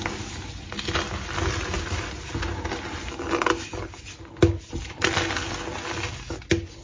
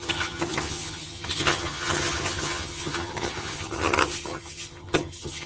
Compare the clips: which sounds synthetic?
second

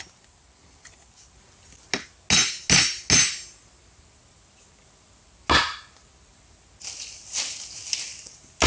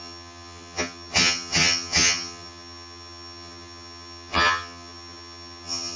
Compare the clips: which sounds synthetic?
second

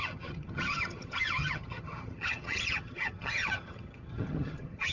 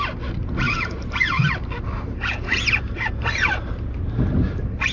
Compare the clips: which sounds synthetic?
first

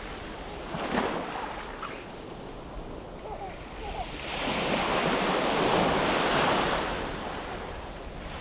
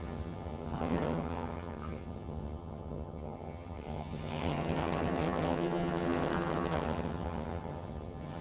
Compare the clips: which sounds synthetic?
second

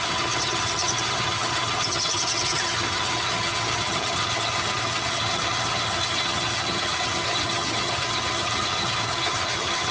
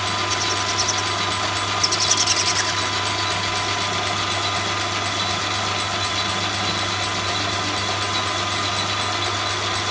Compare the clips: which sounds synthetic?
first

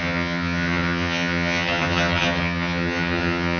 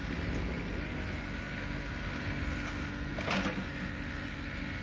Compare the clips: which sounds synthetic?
first